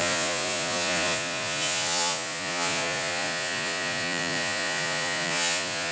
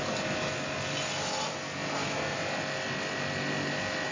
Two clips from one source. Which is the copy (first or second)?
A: first